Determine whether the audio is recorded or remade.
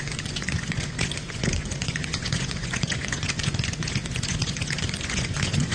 remade